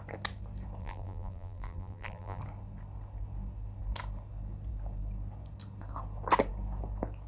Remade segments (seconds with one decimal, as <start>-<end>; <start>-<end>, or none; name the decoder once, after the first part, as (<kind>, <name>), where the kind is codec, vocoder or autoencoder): 0.8-2.4 (vocoder, BigVGAN v2)